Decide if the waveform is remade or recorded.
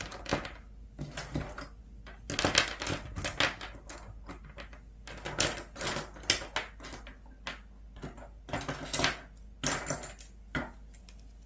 recorded